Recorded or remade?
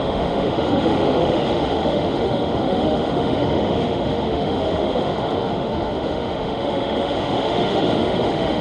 remade